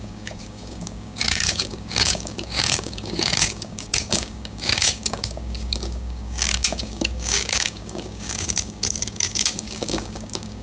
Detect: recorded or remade remade